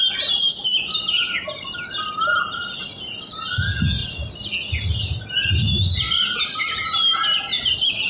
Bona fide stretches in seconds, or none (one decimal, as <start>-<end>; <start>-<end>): 0.0-8.1